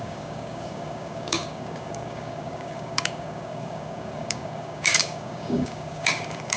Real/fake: fake